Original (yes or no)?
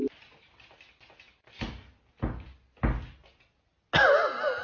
yes